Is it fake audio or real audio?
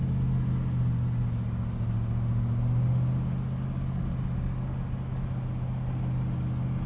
real